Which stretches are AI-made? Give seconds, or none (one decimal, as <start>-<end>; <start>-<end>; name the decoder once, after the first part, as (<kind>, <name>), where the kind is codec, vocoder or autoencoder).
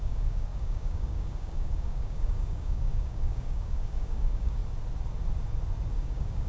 0.0-4.6 (codec, DAC); 5.9-6.5